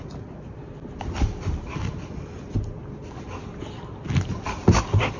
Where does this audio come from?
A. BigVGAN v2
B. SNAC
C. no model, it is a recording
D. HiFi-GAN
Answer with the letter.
C